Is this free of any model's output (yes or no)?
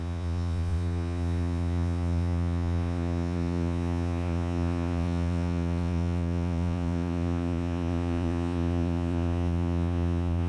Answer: no